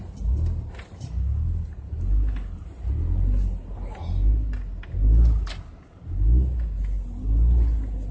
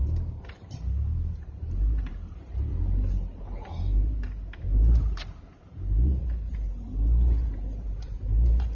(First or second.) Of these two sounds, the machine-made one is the second